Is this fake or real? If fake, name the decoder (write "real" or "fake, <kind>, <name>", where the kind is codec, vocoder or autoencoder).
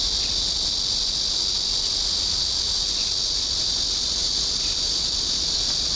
real